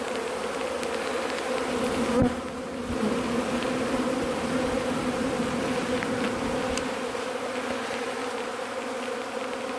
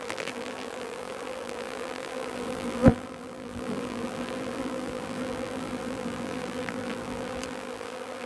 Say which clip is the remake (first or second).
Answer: second